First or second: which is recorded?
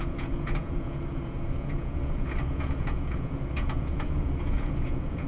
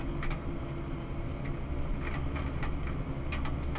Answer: second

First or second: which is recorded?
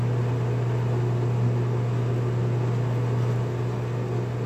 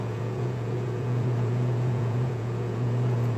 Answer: first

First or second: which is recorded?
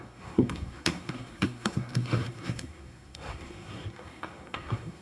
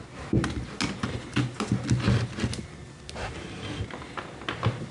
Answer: second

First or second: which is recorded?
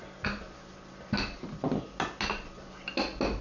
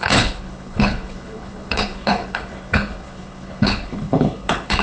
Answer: first